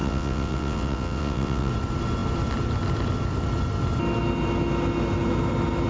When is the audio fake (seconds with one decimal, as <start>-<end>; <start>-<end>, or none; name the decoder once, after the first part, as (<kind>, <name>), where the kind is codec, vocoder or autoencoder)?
0.0-1.7 (vocoder, WaveNeXt)